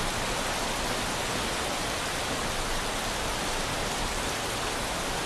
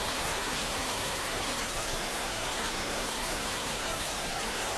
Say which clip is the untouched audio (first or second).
first